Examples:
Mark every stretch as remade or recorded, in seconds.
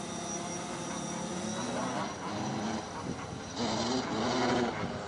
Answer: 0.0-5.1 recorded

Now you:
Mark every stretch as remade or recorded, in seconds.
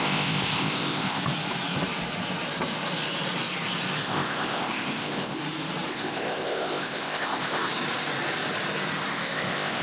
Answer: 0.0-1.2 remade; 1.2-4.0 recorded; 4.0-5.4 remade; 5.4-5.9 recorded; 5.9-7.7 remade; 7.7-9.1 recorded; 9.1-9.8 remade